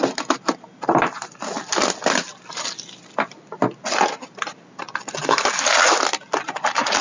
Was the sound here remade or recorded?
recorded